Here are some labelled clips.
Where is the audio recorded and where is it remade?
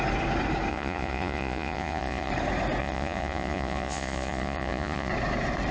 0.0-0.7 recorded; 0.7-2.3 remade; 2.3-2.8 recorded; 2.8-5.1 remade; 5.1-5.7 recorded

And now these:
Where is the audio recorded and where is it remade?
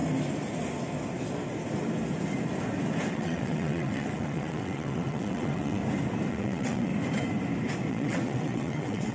0.0-3.1 recorded; 3.1-5.8 remade; 5.8-6.3 recorded; 6.3-6.9 remade; 6.9-7.9 recorded; 7.9-9.1 remade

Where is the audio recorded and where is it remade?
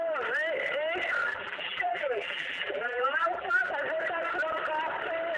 0.0-1.3 recorded; 1.3-3.7 remade; 3.7-5.4 recorded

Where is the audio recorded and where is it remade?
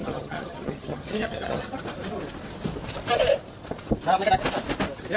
0.0-1.8 remade; 1.8-5.2 recorded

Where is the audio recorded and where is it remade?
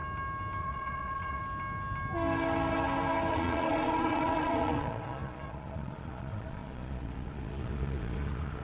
0.0-0.6 recorded; 0.6-1.4 remade; 1.4-3.3 recorded; 3.3-8.6 remade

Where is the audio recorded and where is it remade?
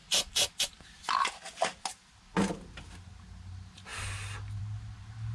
0.0-5.3 recorded